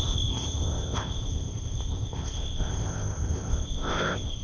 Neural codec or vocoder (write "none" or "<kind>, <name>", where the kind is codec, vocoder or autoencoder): codec, ZipCodec